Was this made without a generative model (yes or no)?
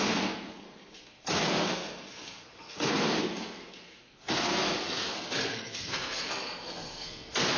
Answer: no